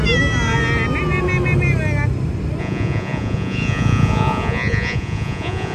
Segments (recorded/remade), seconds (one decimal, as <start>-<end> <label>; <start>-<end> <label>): 0.0-2.6 recorded; 2.6-5.7 remade